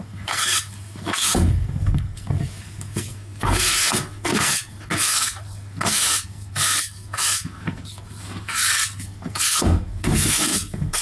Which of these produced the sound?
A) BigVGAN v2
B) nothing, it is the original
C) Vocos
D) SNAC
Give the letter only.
D